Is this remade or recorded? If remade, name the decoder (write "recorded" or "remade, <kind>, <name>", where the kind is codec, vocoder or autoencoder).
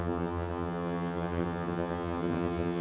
remade, vocoder, HiFi-GAN